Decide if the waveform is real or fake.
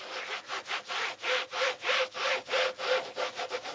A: real